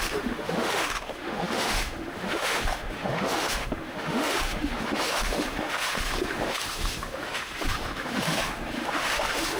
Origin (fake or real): fake